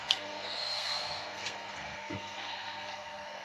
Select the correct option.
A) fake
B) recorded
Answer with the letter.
A